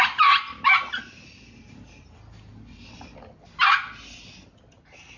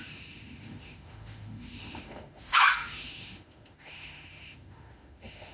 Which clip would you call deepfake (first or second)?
second